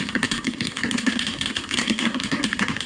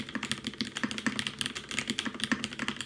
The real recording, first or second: second